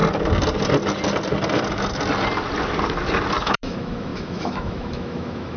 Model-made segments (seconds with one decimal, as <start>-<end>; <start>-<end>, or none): 3.4-5.6